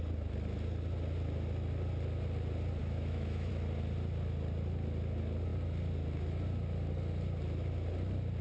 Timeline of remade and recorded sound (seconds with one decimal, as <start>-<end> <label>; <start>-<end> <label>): 0.0-2.8 recorded; 2.8-3.5 remade; 3.5-8.4 recorded